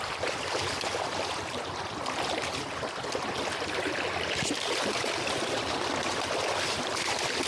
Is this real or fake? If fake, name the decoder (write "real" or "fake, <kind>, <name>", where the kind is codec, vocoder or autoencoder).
real